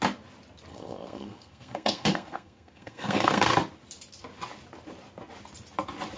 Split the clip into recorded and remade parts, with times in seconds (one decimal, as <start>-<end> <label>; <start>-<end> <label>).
0.0-0.7 recorded; 0.7-3.5 remade; 3.5-6.2 recorded